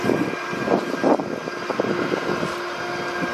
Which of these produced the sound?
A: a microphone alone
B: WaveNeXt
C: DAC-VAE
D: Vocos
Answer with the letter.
A